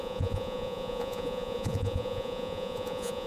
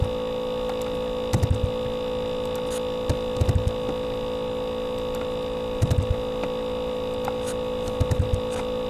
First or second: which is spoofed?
first